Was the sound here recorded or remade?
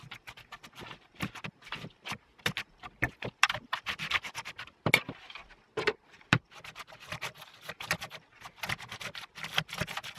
recorded